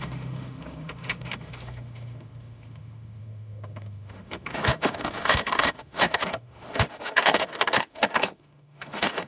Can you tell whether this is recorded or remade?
remade